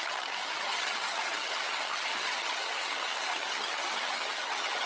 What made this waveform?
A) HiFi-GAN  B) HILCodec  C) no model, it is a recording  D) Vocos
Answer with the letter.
A